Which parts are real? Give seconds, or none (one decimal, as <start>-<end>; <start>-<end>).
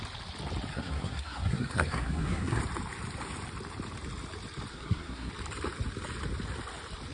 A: 0.0-0.7; 2.6-4.7; 5.3-7.1